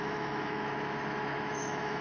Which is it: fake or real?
fake